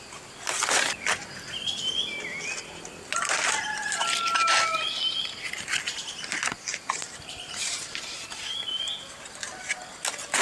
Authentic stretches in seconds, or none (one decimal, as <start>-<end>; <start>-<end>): 0.0-6.7; 8.2-10.4